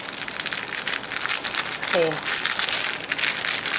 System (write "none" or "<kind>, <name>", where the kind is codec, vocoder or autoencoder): none